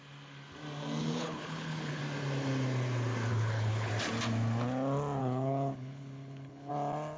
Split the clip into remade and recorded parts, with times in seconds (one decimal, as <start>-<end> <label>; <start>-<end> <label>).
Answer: 0.0-1.0 recorded; 1.0-2.0 remade; 2.0-3.3 recorded; 3.3-3.9 remade; 3.9-5.2 recorded; 5.2-6.7 remade; 6.7-7.2 recorded